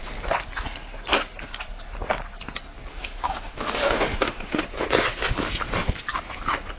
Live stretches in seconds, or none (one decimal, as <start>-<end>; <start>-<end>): 0.0-2.9; 4.6-6.8